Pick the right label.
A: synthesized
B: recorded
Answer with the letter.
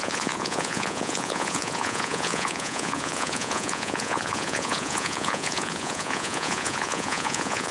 A